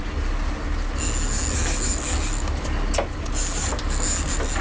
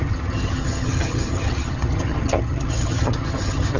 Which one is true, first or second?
first